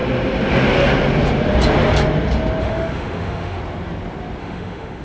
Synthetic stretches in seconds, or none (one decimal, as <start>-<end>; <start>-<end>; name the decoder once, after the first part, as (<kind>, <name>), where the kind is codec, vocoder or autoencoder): 2.6-3.6 (autoencoder, DAC-VAE); 4.4-5.0